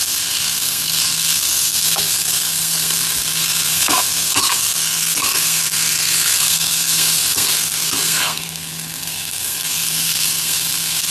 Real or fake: fake